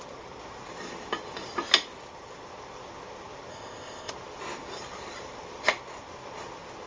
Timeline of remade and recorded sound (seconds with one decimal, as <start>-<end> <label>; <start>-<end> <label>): 0.0-3.5 recorded; 3.5-4.1 remade; 4.1-6.9 recorded